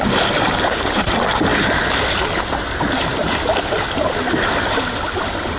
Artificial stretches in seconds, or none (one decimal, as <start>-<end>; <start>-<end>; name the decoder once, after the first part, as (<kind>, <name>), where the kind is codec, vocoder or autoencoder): none